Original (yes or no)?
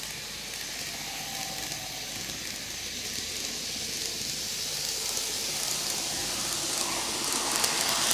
yes